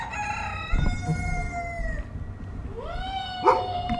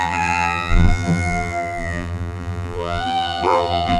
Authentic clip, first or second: first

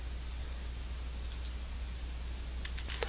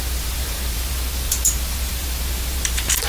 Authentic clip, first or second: first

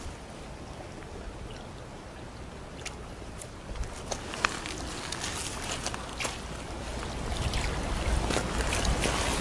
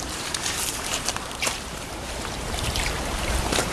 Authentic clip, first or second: first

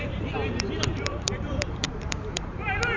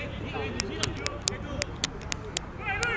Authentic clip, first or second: second